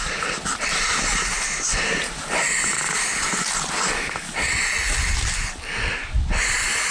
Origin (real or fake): real